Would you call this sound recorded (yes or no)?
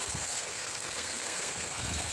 no